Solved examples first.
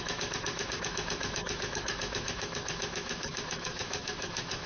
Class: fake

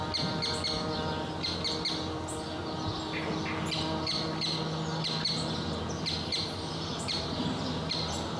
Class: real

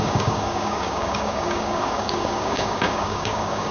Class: fake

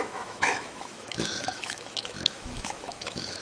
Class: fake